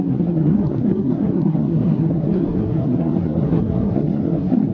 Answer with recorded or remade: remade